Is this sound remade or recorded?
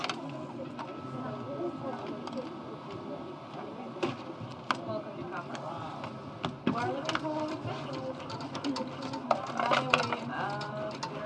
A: recorded